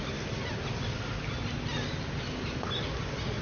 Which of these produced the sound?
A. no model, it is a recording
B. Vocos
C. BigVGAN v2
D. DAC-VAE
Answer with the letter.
A